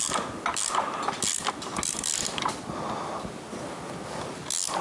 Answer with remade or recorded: recorded